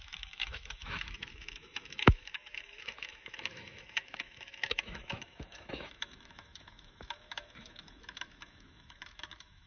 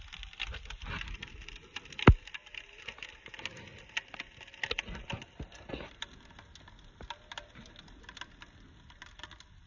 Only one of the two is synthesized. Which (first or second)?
first